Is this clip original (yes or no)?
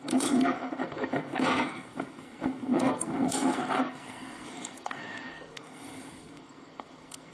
no